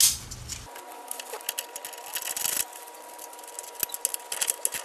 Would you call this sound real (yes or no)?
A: yes